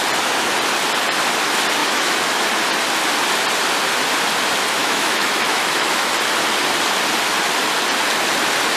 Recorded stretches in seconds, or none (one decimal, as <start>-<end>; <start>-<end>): 0.0-1.8; 2.5-4.8; 6.1-8.8